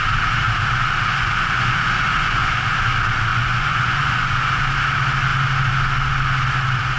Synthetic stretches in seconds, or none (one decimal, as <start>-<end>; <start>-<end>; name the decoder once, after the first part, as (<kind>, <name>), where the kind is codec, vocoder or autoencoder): 1.1-2.6 (vocoder, Vocos); 3.3-4.6